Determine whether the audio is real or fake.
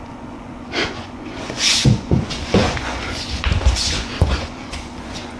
fake